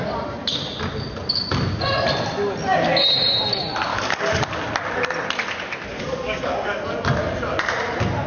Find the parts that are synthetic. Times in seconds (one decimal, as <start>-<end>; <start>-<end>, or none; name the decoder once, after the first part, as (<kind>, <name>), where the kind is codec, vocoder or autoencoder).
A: 3.9-4.4 (codec, DAC); 5.9-6.8